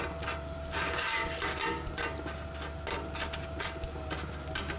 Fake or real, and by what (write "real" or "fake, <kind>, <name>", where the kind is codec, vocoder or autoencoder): real